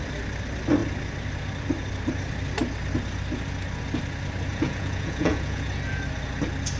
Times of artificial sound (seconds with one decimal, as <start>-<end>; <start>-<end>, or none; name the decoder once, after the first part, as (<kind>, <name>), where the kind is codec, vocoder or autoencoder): 4.5-5.7 (vocoder, Vocos)